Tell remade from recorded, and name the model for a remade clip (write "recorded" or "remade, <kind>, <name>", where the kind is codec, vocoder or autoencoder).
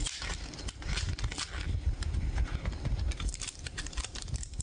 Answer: recorded